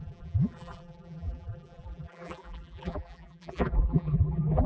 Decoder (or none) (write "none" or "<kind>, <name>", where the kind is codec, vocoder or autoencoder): vocoder, BigVGAN v2